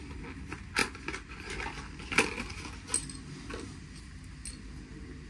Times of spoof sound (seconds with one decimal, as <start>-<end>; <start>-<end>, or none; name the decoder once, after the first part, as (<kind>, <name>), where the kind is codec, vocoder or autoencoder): none